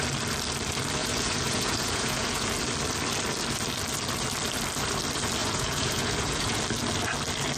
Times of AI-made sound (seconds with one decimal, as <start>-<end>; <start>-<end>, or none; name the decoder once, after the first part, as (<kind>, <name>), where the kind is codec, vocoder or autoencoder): 1.0-2.5 (vocoder, Vocos); 5.4-6.6